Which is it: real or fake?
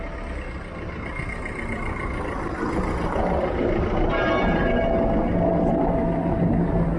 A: real